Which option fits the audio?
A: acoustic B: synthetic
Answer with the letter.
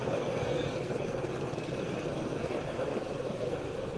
B